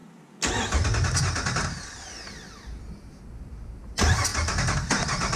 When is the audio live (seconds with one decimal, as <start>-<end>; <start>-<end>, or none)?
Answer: 0.0-5.4